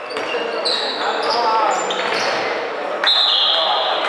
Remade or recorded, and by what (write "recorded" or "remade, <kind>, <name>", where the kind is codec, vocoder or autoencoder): recorded